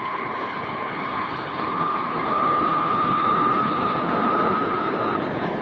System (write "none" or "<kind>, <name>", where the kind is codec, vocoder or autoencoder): codec, HILCodec